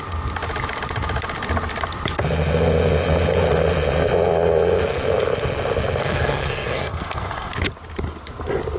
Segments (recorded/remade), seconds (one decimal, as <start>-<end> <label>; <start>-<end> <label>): 0.0-6.0 recorded; 6.0-7.5 remade; 7.5-8.8 recorded